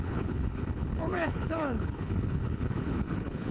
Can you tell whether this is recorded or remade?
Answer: remade